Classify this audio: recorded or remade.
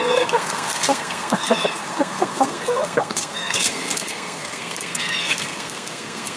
remade